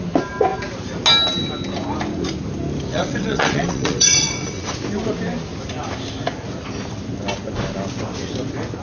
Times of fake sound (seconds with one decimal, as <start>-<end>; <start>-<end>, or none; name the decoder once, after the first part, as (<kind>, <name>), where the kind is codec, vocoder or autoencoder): 2.9-4.7 (vocoder, WaveNeXt)